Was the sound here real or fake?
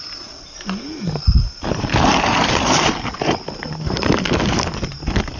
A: real